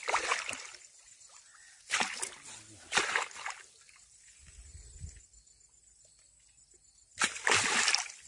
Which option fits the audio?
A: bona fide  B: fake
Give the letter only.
A